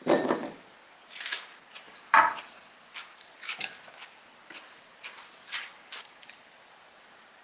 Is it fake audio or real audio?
real